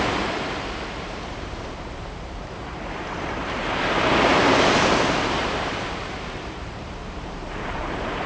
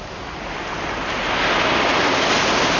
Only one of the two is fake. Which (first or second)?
first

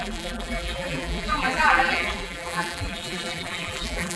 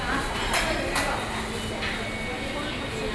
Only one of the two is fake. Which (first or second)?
first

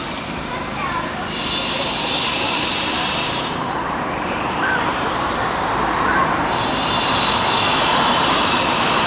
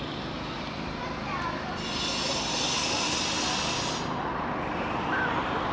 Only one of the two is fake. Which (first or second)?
first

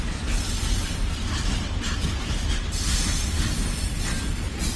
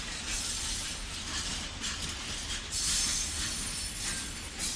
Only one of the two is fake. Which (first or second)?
first